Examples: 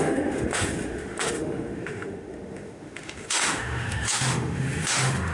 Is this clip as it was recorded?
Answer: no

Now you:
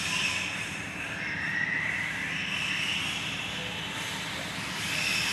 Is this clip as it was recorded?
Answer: yes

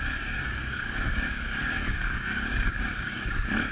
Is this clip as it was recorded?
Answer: no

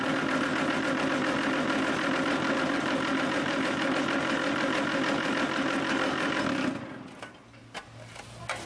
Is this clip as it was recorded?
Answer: yes